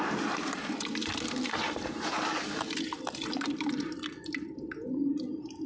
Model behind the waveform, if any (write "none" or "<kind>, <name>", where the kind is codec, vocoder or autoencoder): none